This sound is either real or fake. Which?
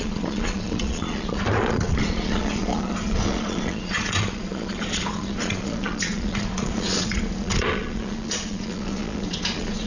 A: fake